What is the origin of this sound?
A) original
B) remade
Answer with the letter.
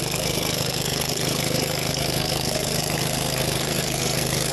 B